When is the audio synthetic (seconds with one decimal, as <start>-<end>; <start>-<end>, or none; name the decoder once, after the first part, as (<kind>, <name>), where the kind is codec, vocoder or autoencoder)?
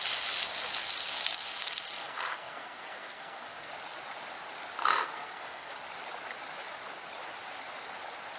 0.8-3.7 (codec, SNAC); 4.8-5.7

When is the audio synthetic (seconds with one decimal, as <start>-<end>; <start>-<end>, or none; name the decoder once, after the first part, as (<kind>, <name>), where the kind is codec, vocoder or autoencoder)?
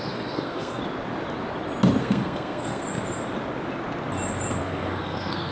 0.0-0.8 (codec, SNAC); 2.0-2.8; 4.6-5.5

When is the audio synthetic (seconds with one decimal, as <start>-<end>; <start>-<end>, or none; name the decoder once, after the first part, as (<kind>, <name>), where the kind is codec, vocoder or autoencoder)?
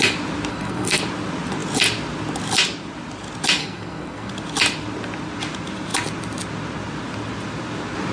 0.5-1.0 (codec, SNAC); 3.6-4.3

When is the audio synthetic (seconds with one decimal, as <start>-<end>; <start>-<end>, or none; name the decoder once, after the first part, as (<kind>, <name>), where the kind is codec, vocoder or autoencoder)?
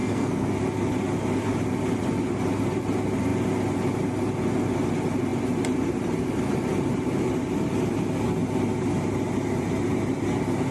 0.0-0.5 (codec, SNAC)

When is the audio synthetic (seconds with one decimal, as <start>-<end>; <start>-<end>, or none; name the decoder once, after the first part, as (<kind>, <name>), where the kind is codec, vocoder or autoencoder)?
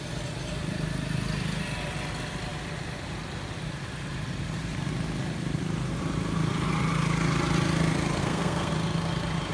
8.2-8.7 (codec, SNAC)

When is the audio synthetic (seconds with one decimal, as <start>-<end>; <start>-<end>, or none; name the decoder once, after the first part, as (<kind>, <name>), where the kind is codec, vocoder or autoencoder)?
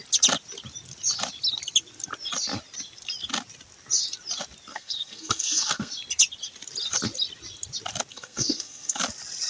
4.7-5.9 (codec, SNAC); 8.1-9.0